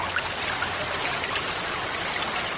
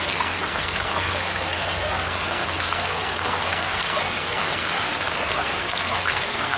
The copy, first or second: second